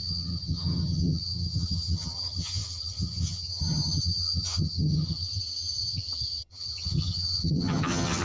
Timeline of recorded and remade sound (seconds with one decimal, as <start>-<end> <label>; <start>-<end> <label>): 0.0-8.2 remade